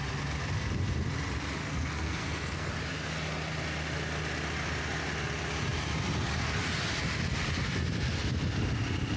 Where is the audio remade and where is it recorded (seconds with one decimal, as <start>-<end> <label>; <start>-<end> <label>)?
0.0-1.6 recorded; 1.6-2.7 remade; 2.7-9.2 recorded